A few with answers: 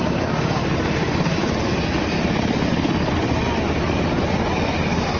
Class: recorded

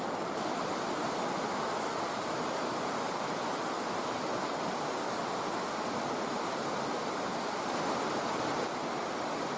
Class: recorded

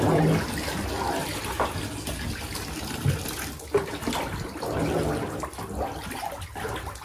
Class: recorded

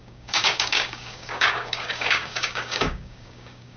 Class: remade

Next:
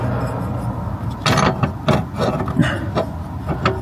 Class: recorded